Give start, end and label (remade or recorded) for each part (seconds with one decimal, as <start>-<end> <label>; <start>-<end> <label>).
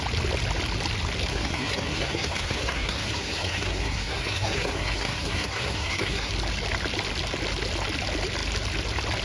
0.0-1.3 recorded; 1.3-6.3 remade; 6.3-9.2 recorded